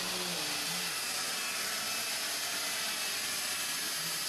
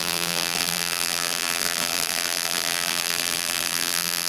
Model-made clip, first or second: second